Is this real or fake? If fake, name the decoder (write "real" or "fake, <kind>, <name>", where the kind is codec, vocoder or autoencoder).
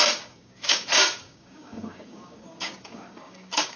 fake, codec, DAC